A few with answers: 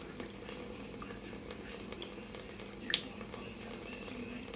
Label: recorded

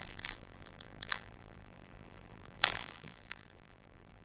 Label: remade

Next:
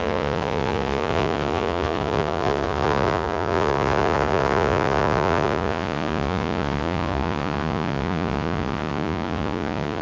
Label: remade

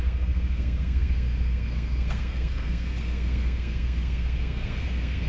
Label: remade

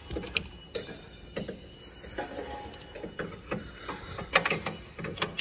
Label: recorded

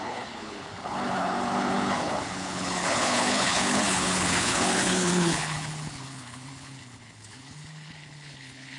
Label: remade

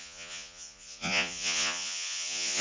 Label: remade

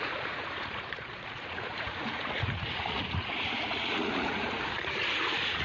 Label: remade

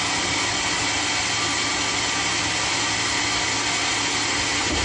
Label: recorded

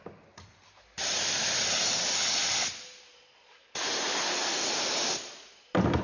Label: recorded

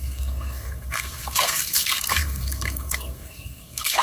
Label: remade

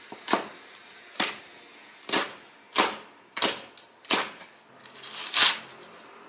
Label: recorded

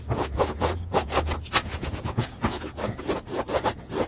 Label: remade